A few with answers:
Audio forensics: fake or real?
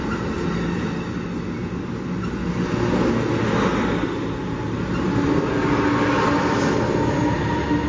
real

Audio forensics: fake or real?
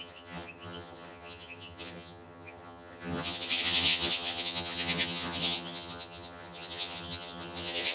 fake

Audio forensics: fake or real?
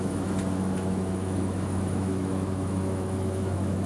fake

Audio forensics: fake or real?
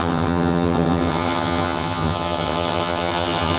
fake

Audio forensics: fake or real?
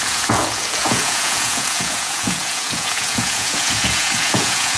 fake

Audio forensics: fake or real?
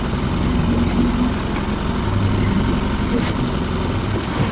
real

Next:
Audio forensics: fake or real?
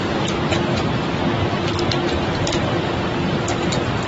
real